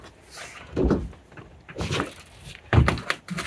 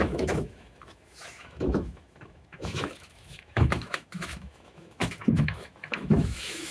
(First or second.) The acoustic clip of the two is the first